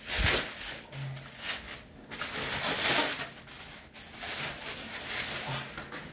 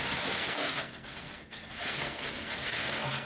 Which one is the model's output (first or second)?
second